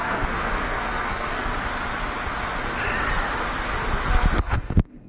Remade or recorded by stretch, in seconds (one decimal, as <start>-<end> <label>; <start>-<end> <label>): 0.0-1.5 remade; 1.5-4.4 recorded; 4.4-5.1 remade